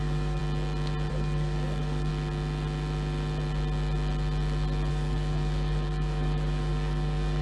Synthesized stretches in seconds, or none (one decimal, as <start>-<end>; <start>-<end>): 0.0-0.4; 1.1-2.1; 4.9-7.4